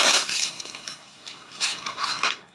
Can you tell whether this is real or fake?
fake